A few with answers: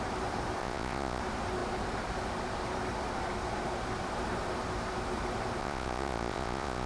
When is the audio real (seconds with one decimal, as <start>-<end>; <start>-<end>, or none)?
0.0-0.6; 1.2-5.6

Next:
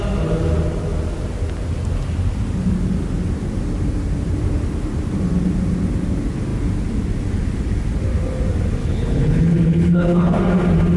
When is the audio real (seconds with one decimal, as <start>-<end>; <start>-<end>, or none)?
0.0-8.8; 10.4-11.0

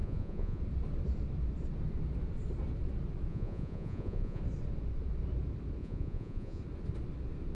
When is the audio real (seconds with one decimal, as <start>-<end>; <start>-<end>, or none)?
0.6-3.3; 4.4-5.8; 6.6-7.5

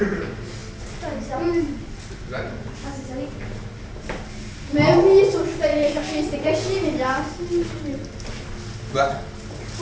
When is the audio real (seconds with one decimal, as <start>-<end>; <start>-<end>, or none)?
0.0-5.7; 6.2-9.8

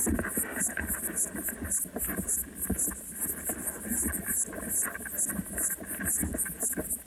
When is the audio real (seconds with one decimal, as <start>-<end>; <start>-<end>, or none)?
0.0-7.1

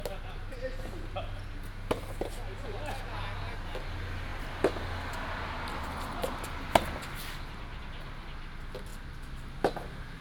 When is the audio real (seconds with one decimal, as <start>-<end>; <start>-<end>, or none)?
0.0-10.2

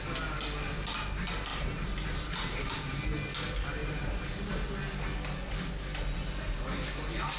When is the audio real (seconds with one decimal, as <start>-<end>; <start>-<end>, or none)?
0.0-1.5; 3.0-3.8; 4.5-7.4